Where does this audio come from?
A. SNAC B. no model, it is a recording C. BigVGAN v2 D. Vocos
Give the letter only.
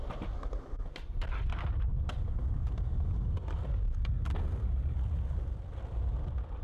B